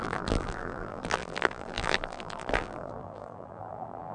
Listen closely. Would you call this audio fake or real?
fake